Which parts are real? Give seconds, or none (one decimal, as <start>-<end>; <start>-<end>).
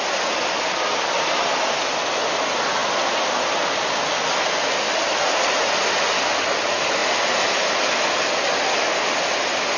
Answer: 0.0-9.8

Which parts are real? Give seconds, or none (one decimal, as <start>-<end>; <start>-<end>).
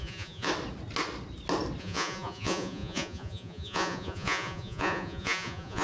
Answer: 0.5-1.8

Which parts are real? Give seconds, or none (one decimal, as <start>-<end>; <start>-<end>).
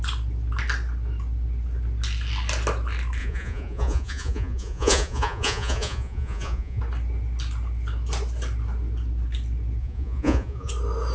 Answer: 0.0-3.2; 6.8-9.8; 10.7-11.1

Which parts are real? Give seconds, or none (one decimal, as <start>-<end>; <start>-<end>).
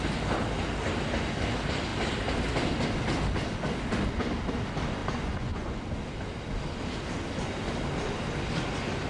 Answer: 0.0-5.0; 5.8-9.1